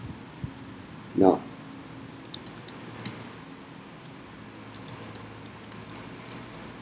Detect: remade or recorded recorded